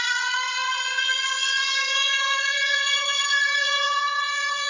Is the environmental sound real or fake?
fake